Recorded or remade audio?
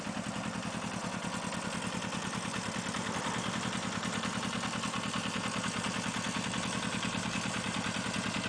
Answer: recorded